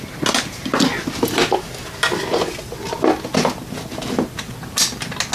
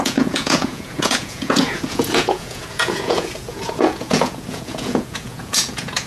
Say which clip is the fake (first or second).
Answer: second